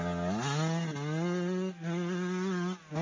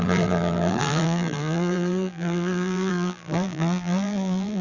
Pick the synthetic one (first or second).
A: second